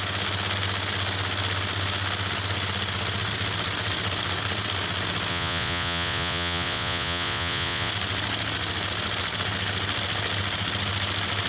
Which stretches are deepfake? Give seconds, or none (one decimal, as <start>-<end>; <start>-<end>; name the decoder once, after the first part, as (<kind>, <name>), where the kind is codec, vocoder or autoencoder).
5.3-7.9 (vocoder, Vocos)